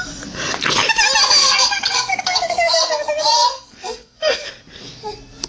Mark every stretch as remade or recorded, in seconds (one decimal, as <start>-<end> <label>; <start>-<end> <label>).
0.0-1.4 recorded; 1.4-4.5 remade; 4.5-5.5 recorded